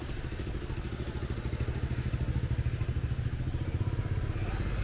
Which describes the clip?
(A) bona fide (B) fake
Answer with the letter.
A